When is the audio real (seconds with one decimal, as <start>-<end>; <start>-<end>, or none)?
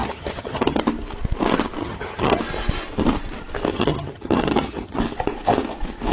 0.8-1.8; 2.4-3.7; 5.0-6.1